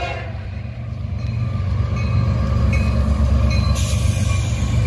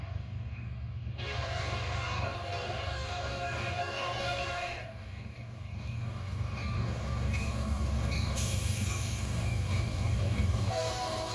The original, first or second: first